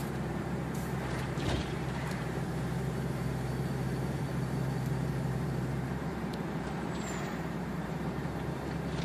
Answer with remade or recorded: remade